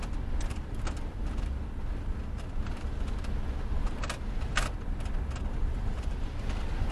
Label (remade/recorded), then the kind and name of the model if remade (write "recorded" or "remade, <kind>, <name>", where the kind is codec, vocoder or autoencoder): recorded